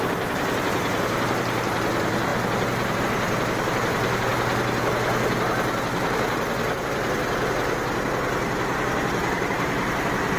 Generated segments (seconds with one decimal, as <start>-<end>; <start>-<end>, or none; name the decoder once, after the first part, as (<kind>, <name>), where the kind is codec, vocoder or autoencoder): 0.0-2.3 (vocoder, BigVGAN v2); 3.0-4.3; 9.5-10.4